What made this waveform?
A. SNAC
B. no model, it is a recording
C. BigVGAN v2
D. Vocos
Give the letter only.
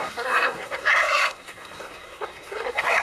A